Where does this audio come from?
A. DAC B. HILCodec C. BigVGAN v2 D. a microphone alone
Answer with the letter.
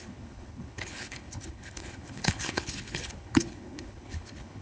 B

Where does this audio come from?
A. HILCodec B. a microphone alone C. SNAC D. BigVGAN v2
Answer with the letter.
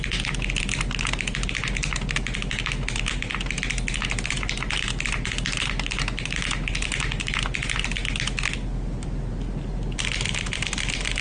B